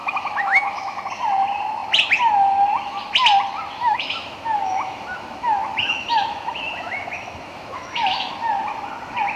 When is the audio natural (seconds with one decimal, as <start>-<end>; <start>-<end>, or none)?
1.0-3.8; 8.3-9.4